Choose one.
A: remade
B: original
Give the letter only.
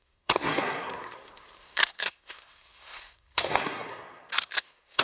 A